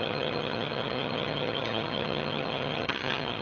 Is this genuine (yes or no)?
no